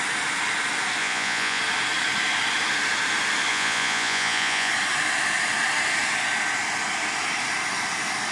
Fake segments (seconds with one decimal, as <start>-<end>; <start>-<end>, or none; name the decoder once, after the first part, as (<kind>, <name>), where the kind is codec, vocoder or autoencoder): 1.0-1.6 (vocoder, Vocos); 3.5-4.7